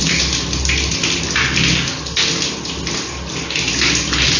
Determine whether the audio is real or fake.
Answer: real